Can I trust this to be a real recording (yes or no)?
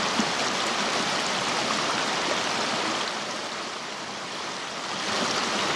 yes